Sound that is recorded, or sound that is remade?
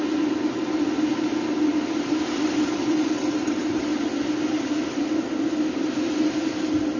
recorded